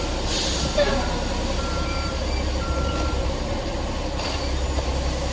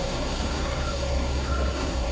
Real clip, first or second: first